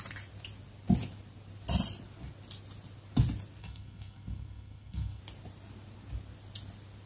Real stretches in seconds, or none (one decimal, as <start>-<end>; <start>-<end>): 0.0-3.6; 5.2-7.1